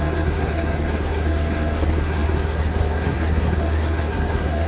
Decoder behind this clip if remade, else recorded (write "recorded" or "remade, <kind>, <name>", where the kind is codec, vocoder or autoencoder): remade, codec, SNAC